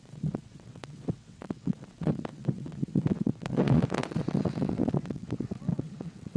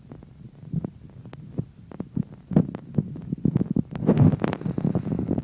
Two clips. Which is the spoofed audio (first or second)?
first